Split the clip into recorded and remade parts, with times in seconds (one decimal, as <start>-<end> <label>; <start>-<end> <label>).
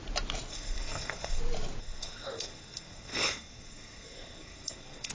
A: 0.0-0.5 recorded; 0.5-1.4 remade; 1.4-1.8 recorded; 1.8-5.1 remade